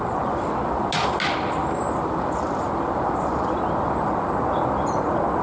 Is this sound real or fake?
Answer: real